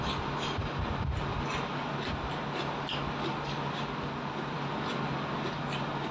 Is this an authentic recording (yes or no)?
yes